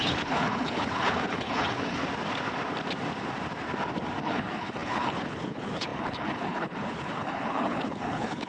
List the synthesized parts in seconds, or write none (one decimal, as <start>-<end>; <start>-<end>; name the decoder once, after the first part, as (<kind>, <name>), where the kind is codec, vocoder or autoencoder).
0.0-2.0 (codec, HILCodec); 4.2-8.5